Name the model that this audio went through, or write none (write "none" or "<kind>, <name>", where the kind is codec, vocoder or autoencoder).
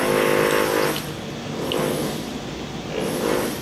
none